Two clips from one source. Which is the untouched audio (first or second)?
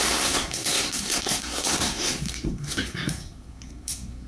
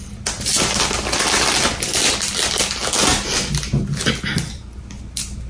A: second